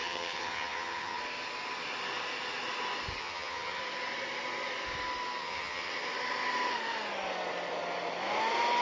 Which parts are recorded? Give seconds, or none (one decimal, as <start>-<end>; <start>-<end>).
1.2-3.2; 3.8-5.4; 5.9-8.8